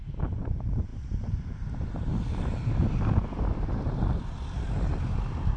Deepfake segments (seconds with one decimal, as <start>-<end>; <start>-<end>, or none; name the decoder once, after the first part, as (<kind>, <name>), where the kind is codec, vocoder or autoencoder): none